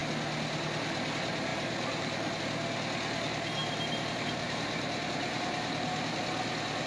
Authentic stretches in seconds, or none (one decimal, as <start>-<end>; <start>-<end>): 0.0-1.5; 2.4-3.6; 6.1-6.9